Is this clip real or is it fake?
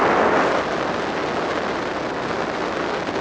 real